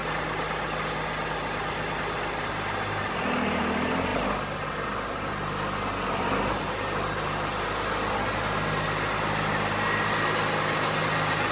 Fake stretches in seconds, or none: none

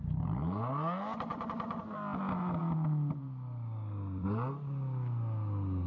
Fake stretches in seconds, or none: 1.3-1.8 (vocoder, BigVGAN v2)